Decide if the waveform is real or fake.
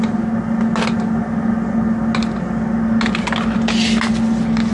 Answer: real